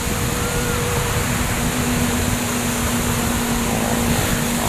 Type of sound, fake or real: real